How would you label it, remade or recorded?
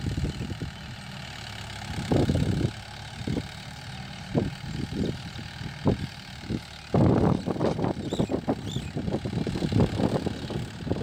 recorded